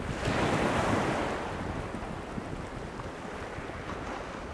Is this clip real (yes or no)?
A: yes